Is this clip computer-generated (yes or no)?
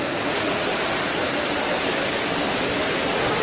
no